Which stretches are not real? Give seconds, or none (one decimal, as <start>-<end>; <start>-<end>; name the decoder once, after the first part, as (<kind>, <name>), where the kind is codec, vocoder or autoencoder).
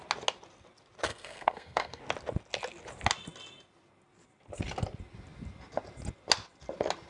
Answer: 1.1-2.0 (codec, SNAC)